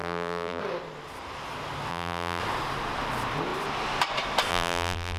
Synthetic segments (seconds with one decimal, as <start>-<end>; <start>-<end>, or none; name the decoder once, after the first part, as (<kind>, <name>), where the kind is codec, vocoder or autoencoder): 0.0-0.6 (vocoder, BigVGAN v2); 1.9-2.4; 4.5-5.2